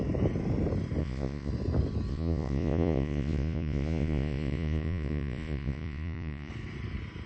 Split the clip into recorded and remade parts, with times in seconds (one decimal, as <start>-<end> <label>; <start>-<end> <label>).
0.0-1.0 recorded; 1.0-1.5 remade; 1.5-2.1 recorded; 2.1-6.5 remade; 6.5-7.3 recorded